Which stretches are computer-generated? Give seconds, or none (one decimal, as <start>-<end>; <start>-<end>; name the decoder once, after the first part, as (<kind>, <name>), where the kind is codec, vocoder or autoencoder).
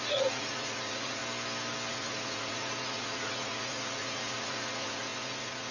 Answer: 0.0-1.2 (vocoder, Vocos); 1.9-5.7